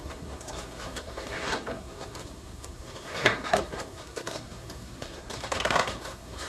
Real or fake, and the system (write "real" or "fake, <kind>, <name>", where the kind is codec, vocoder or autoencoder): fake, codec, SNAC